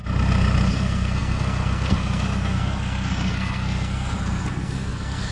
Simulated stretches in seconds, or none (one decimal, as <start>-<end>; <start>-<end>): 0.7-5.3